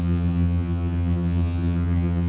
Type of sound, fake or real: fake